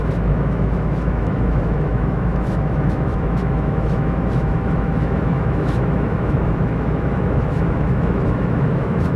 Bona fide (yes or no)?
no